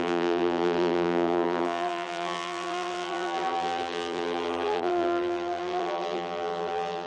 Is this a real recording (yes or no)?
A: no